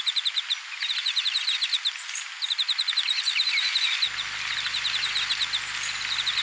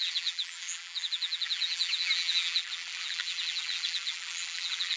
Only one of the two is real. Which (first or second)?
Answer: first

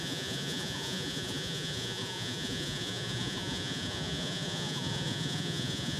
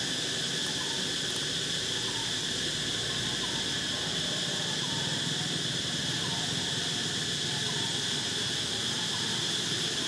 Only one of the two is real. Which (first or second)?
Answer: second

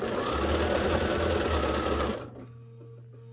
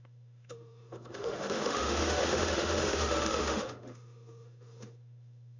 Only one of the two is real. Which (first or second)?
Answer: first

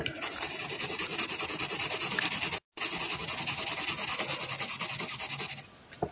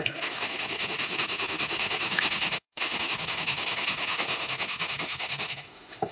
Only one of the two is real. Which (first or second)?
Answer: first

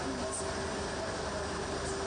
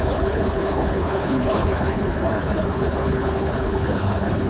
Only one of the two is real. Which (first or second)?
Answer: first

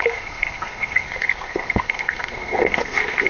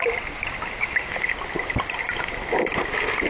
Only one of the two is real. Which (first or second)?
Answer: second